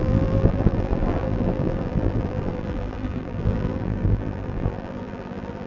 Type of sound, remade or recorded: remade